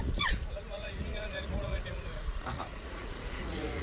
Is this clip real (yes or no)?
no